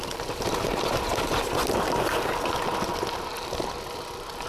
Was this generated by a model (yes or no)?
no